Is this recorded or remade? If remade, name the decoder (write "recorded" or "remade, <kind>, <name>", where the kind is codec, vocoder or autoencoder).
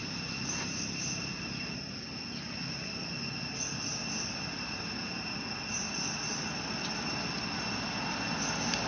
recorded